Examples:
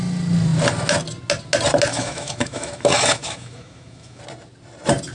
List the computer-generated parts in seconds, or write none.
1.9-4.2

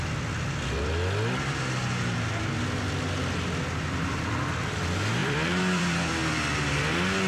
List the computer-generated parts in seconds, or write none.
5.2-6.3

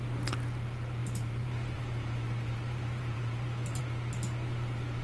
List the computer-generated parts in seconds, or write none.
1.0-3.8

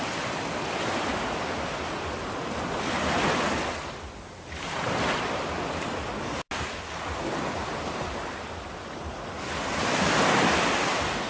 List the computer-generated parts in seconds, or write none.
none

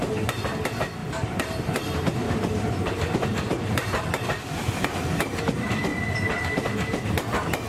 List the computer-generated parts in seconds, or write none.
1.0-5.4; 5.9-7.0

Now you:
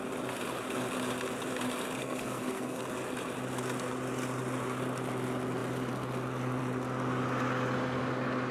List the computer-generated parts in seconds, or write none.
2.0-2.8

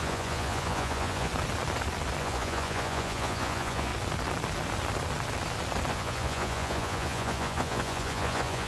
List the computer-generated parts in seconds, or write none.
0.0-1.3; 2.2-3.9; 5.9-8.7

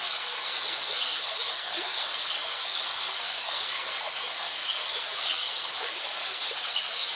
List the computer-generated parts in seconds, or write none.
0.0-7.2